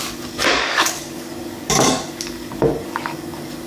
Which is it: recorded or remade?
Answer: remade